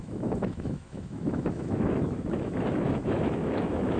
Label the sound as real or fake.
fake